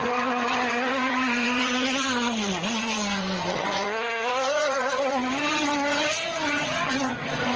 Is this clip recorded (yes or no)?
no